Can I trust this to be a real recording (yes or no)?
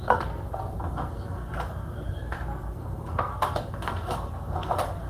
no